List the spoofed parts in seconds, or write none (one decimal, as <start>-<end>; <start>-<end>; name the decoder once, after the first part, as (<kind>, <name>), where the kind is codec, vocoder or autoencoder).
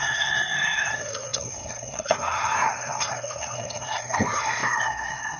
0.0-5.4 (codec, SNAC)